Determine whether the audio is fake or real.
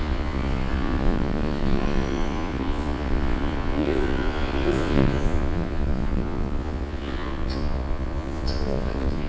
fake